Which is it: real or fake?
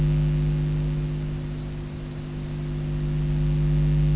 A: real